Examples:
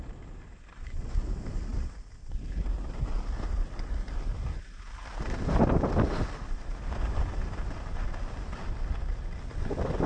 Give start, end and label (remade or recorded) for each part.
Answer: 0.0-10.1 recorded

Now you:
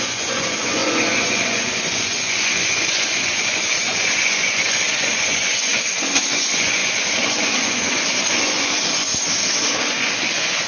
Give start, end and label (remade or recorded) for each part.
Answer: 0.0-9.1 remade; 9.1-9.8 recorded; 9.8-10.7 remade

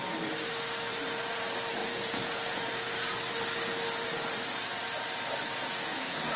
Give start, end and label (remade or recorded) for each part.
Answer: 0.0-1.8 recorded; 1.8-2.9 remade; 2.9-5.6 recorded; 5.6-6.4 remade

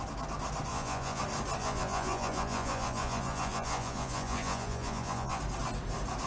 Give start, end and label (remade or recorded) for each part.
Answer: 0.0-0.7 recorded; 0.7-1.2 remade; 1.2-1.6 recorded; 1.6-5.4 remade; 5.4-6.3 recorded